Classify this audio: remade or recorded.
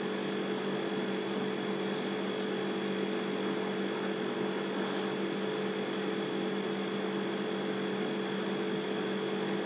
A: recorded